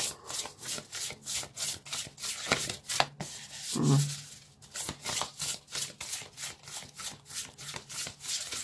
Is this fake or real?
real